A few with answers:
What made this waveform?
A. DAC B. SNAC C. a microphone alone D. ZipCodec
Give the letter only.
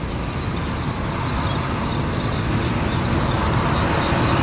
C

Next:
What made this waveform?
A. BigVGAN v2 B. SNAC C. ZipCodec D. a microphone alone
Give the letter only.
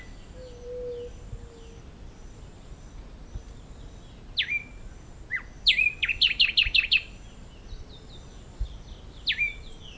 D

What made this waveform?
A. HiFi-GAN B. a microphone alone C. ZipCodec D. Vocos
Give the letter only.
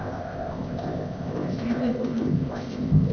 C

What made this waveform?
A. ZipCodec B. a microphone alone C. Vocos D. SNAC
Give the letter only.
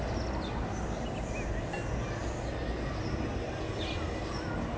B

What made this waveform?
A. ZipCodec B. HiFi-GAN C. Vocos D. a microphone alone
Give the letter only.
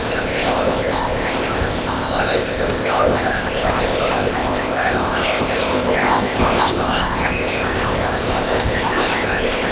A